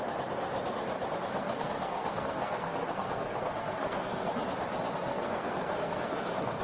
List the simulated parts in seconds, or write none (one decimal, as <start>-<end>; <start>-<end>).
1.3-4.3; 5.1-6.6